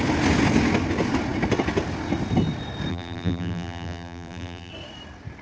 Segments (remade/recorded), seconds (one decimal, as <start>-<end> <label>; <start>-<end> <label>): 0.0-2.9 recorded; 2.9-4.7 remade; 4.7-5.4 recorded